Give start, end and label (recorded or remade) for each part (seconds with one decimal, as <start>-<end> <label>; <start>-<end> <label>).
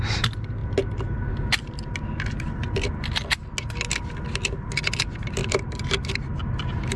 0.0-7.0 recorded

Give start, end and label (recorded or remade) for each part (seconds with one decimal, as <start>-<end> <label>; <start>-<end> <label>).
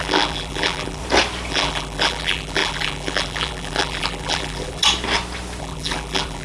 0.0-1.0 remade; 1.0-1.5 recorded; 1.5-4.8 remade; 4.8-5.6 recorded; 5.6-6.4 remade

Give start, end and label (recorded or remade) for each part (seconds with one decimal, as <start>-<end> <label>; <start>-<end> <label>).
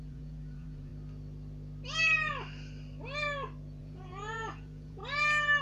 0.0-0.9 remade; 0.9-3.8 recorded; 3.8-5.0 remade; 5.0-5.6 recorded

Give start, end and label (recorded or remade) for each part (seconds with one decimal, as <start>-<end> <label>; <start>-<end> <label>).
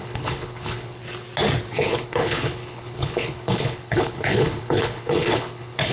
0.0-1.0 remade; 1.0-1.7 recorded; 1.7-5.9 remade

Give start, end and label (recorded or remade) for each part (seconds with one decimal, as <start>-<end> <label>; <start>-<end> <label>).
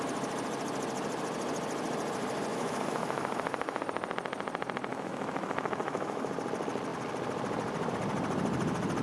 0.0-2.5 recorded; 2.5-3.8 remade; 3.8-4.9 recorded; 4.9-6.3 remade; 6.3-9.0 recorded